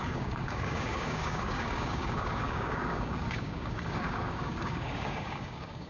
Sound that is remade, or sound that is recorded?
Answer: remade